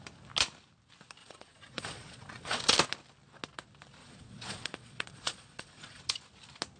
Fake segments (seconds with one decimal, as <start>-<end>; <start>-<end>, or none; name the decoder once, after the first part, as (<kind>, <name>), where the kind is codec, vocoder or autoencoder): 1.2-2.6 (vocoder, Vocos); 4.0-6.0